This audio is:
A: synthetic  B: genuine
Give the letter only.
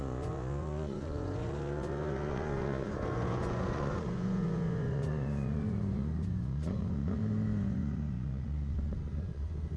A